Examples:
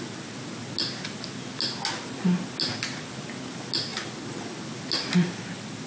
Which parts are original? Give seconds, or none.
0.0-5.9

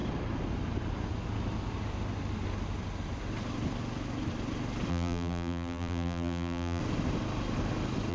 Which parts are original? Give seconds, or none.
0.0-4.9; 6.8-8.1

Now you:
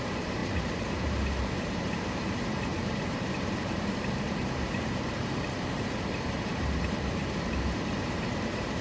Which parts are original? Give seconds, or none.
none